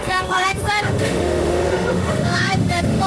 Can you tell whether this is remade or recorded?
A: remade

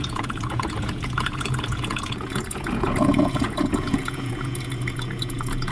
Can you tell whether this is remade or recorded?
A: remade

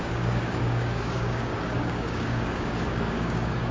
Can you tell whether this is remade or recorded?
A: remade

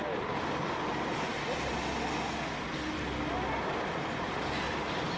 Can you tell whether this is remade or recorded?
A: recorded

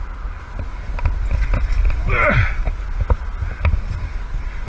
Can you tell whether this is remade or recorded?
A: recorded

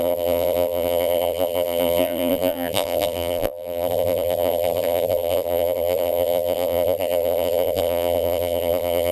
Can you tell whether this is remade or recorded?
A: remade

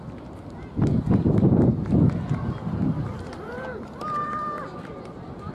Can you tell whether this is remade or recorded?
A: remade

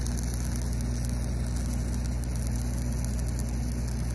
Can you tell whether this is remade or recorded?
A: recorded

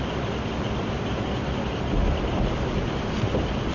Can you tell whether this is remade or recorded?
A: recorded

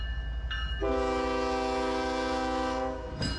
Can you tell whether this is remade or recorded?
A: recorded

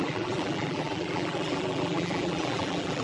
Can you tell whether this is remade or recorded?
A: remade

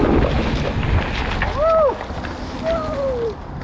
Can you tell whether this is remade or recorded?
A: recorded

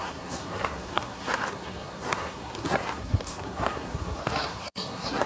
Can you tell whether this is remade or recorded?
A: remade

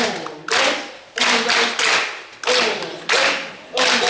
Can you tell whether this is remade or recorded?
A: recorded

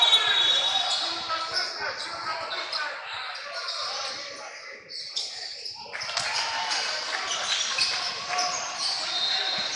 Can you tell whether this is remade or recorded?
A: recorded